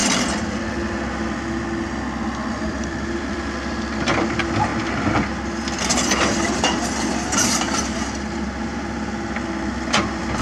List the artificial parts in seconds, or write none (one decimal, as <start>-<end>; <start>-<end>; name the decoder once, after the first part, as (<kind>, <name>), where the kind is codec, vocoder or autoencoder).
2.5-4.7 (vocoder, BigVGAN v2); 5.9-10.4